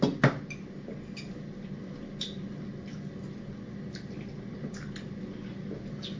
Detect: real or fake real